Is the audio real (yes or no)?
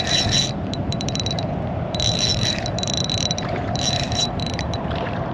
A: no